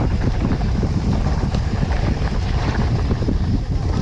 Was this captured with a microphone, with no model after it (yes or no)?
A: no